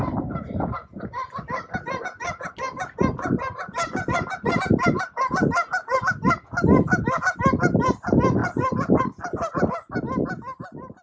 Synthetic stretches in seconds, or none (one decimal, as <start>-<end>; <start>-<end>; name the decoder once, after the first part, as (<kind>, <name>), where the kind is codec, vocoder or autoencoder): none